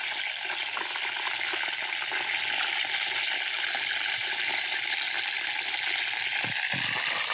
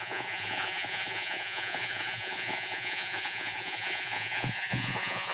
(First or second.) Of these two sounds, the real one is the first